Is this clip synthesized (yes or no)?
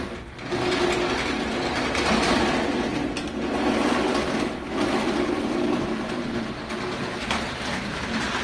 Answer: no